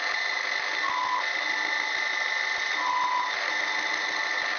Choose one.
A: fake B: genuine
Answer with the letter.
B